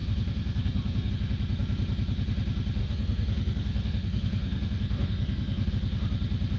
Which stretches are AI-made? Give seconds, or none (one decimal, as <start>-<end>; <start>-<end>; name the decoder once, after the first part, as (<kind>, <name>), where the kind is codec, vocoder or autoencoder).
0.0-1.1 (codec, SNAC); 2.8-5.7